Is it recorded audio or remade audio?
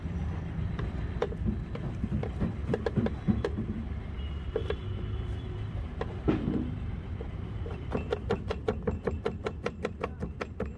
remade